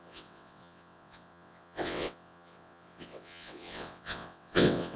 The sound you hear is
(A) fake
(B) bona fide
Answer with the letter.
A